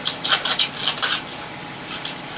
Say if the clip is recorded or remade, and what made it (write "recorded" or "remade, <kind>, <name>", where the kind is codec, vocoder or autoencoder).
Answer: recorded